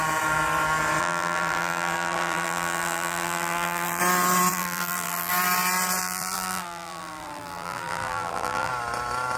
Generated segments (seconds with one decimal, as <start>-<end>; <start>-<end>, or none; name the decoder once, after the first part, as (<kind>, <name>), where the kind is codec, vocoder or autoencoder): 1.0-4.0 (vocoder, BigVGAN v2); 4.5-5.3; 6.0-8.7